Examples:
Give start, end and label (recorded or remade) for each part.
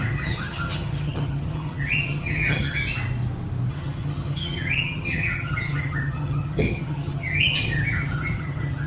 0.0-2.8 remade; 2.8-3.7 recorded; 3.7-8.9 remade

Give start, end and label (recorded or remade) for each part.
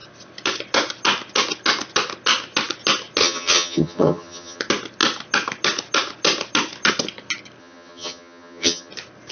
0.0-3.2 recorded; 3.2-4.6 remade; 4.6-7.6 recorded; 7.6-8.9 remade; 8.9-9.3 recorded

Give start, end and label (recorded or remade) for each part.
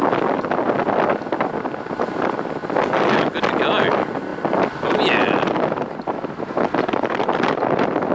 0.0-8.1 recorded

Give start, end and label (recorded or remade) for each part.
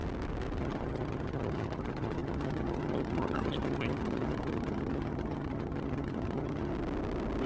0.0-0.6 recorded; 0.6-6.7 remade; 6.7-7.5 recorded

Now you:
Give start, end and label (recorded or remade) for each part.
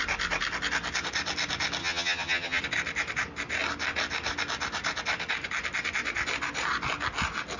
0.0-1.8 recorded; 1.8-2.6 remade; 2.6-7.6 recorded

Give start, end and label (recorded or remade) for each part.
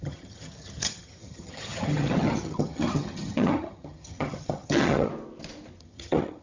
0.0-5.1 remade; 5.1-5.8 recorded; 5.8-6.4 remade